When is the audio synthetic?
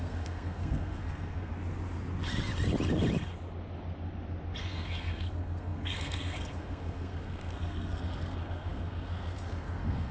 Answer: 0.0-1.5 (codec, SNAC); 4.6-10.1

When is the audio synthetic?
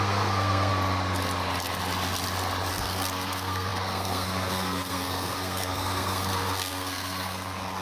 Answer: 0.0-0.7 (codec, SNAC); 2.7-7.8